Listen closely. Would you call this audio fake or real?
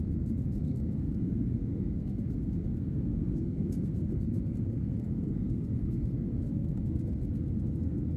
fake